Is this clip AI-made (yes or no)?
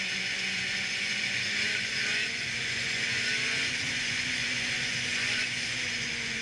yes